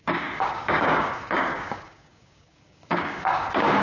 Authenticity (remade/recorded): remade